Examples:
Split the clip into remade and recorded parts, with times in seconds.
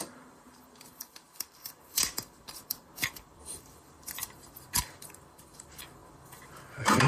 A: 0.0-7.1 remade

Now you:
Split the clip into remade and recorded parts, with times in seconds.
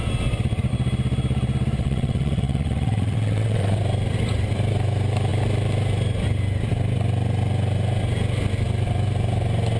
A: 0.0-1.8 recorded; 1.8-3.8 remade; 3.8-9.8 recorded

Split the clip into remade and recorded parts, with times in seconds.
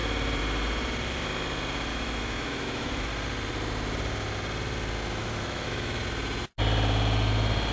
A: 0.0-1.9 recorded; 1.9-3.1 remade; 3.1-5.2 recorded; 5.2-6.0 remade; 6.0-7.7 recorded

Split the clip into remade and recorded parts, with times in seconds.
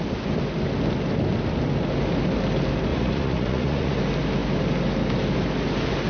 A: 0.0-2.9 recorded; 2.9-4.0 remade; 4.0-6.1 recorded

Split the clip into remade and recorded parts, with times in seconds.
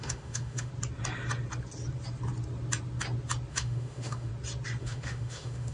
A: 0.0-0.7 remade; 0.7-3.5 recorded; 3.5-4.3 remade; 4.3-4.8 recorded; 4.8-5.7 remade